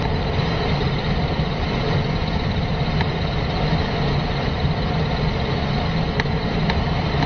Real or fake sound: real